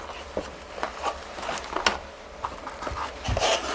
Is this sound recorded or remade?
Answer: recorded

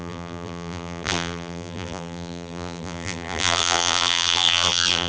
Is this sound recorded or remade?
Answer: remade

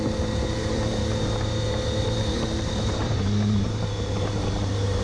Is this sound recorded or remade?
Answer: remade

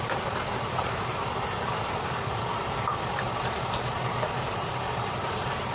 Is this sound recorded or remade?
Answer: remade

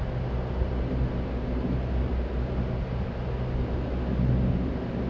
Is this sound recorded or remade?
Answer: recorded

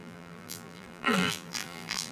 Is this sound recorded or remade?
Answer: remade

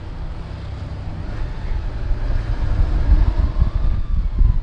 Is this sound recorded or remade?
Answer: recorded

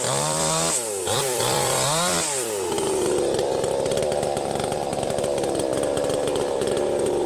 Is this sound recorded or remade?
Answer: remade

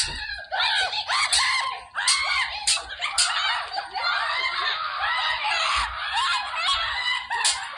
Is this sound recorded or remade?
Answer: recorded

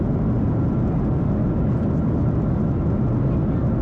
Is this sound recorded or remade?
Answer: recorded